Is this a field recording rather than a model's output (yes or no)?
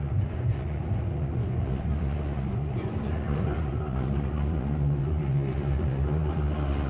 no